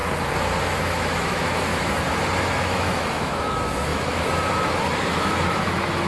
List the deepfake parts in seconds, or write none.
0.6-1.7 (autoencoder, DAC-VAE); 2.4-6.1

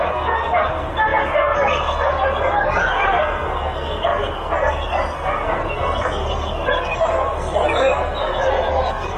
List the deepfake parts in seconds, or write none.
0.0-9.2 (codec, SNAC)

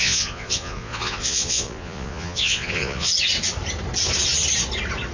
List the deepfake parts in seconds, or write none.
0.0-3.1 (vocoder, Vocos)

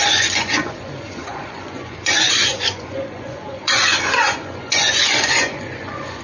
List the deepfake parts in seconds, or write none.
0.0-6.2 (vocoder, Vocos)

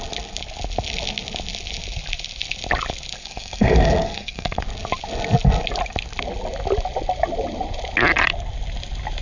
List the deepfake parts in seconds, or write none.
3.2-4.6 (codec, SNAC)

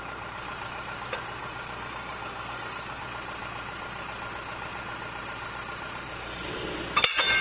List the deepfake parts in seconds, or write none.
1.4-3.0 (codec, DAC)

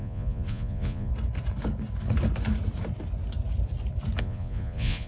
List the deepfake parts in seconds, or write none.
0.0-1.1 (vocoder, Vocos); 4.2-5.1